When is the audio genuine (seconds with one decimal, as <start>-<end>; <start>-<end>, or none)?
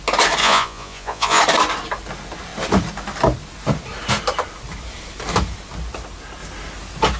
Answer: 0.0-0.4; 1.4-7.2